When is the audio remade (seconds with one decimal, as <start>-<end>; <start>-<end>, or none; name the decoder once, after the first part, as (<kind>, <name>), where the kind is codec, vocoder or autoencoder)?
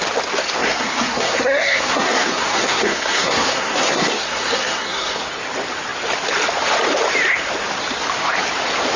0.6-5.3 (codec, SNAC)